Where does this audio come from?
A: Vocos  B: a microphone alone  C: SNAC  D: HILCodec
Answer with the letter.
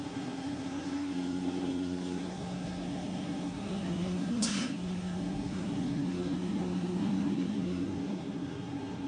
C